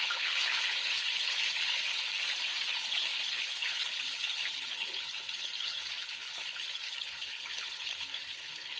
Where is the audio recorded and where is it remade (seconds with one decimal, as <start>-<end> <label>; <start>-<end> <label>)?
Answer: 0.0-2.1 remade; 2.1-2.7 recorded; 2.7-8.8 remade